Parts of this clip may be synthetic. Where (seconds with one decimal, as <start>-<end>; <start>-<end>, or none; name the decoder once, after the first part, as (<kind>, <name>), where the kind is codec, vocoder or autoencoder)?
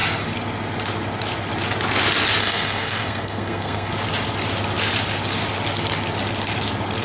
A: 2.4-3.9 (codec, SNAC)